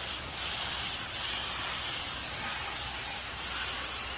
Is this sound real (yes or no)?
yes